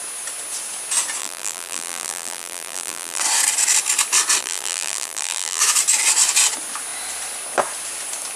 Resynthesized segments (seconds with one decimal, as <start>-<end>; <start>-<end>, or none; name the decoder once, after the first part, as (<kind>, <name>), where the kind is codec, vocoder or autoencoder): 1.2-3.2 (vocoder, BigVGAN v2); 4.4-5.6